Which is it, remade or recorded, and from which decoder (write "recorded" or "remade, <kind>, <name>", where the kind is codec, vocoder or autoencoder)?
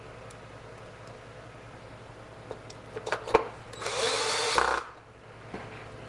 recorded